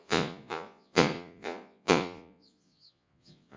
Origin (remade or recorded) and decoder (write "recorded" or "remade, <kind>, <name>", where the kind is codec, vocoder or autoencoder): remade, vocoder, Vocos